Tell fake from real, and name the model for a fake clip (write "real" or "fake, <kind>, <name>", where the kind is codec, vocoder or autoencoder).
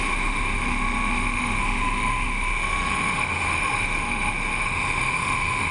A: fake, autoencoder, DAC-VAE